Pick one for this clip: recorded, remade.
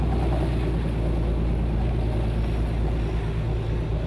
recorded